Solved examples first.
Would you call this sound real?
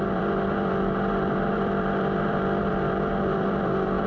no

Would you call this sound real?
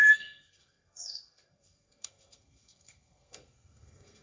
no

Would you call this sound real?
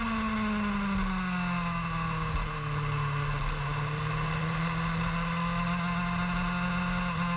yes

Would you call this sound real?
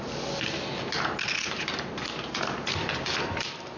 yes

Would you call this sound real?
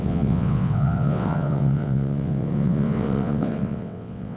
no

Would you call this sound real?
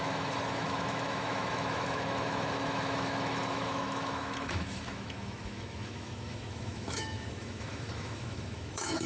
no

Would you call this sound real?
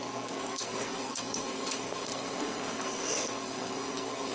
no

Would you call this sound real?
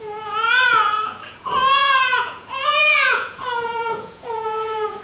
no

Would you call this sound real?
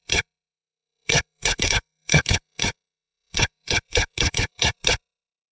no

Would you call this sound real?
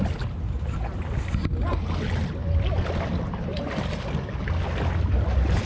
yes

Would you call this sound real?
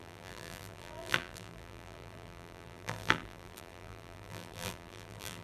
no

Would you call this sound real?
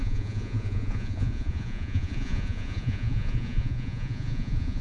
no